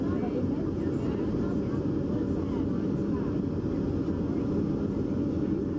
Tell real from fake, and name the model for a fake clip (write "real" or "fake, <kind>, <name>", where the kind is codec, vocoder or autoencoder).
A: real